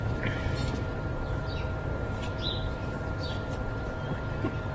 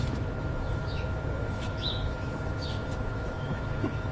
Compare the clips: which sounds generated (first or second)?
second